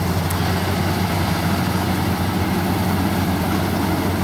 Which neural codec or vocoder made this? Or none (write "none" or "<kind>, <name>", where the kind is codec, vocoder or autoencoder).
none